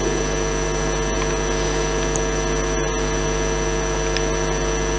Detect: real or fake real